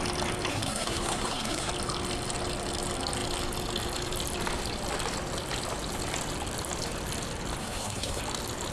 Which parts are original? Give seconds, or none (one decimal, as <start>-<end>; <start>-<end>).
0.0-0.5; 1.7-7.6; 8.2-8.7